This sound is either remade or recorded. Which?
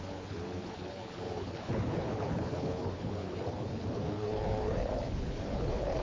remade